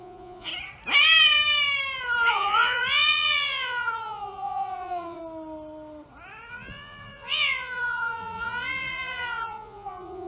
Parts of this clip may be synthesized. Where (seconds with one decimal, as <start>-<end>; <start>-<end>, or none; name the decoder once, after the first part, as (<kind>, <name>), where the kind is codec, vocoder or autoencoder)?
0.0-0.5 (vocoder, Vocos); 2.3-5.2; 6.5-10.3